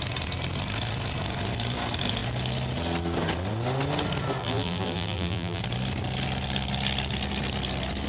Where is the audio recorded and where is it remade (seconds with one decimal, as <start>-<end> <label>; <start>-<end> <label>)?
0.0-4.4 recorded; 4.4-5.6 remade; 5.6-8.1 recorded